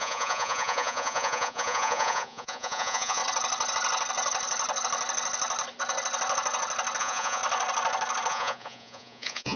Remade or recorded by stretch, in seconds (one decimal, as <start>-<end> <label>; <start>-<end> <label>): 0.0-3.2 remade; 3.2-7.0 recorded; 7.0-7.4 remade; 7.4-8.3 recorded; 8.3-9.6 remade